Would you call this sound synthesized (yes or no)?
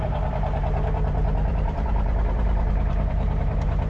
yes